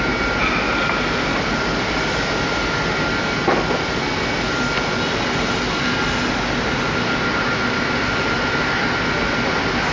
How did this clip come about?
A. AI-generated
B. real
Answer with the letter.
B